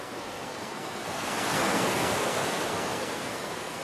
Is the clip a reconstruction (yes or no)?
yes